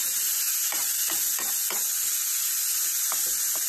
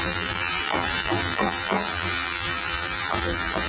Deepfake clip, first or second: second